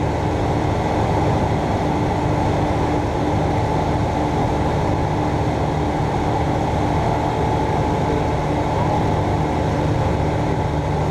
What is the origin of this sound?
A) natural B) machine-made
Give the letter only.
A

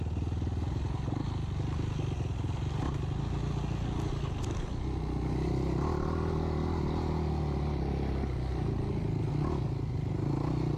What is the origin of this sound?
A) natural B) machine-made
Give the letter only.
A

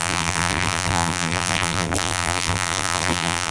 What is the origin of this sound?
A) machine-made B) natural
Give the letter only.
A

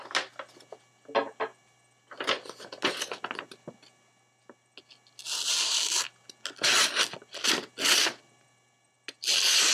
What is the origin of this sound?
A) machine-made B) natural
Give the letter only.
B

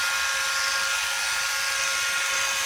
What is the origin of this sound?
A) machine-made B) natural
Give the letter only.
B